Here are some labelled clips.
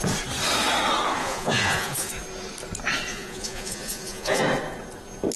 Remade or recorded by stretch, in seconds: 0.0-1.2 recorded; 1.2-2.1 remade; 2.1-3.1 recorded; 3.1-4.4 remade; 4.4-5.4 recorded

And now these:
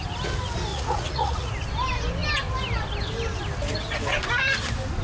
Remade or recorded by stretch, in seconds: 0.0-0.7 recorded; 0.7-1.5 remade; 1.5-5.0 recorded

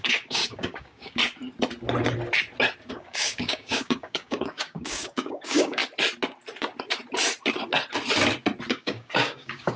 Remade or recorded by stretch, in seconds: 0.0-1.2 remade; 1.2-2.9 recorded; 2.9-5.8 remade; 5.8-8.7 recorded; 8.7-9.8 remade

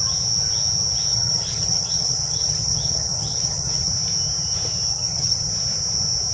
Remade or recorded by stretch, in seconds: 0.0-1.1 recorded; 1.1-3.9 remade; 3.9-4.9 recorded; 4.9-5.5 remade; 5.5-6.3 recorded

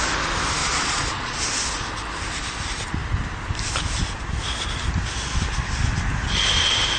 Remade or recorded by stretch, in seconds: 0.0-0.6 recorded; 0.6-1.4 remade; 1.4-7.0 recorded

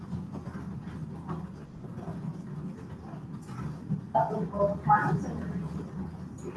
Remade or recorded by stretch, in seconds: 0.0-6.6 recorded